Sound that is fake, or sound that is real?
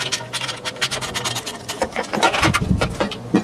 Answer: fake